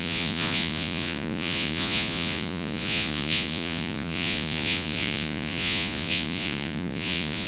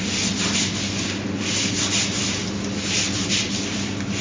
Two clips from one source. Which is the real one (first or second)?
second